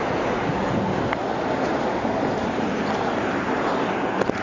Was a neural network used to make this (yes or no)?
no